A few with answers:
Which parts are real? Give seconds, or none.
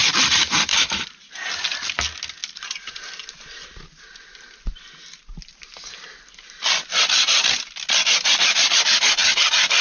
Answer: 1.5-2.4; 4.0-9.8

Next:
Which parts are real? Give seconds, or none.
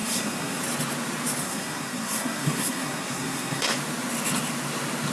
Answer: 0.6-1.4; 3.7-5.1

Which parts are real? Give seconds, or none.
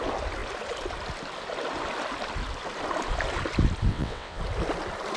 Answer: 0.0-3.9; 4.4-5.2